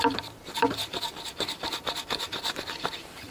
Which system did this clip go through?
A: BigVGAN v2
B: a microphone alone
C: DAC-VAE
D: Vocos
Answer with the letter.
A